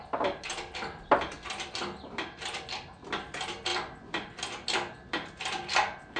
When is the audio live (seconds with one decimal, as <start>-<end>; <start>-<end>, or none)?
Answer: 0.0-6.2